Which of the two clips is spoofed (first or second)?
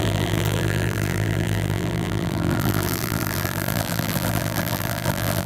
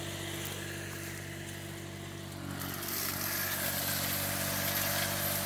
first